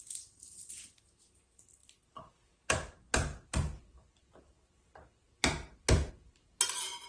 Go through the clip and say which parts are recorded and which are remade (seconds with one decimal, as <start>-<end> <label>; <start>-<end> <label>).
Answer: 0.0-7.1 recorded